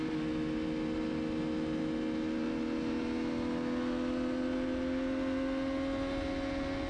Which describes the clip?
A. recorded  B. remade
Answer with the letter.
A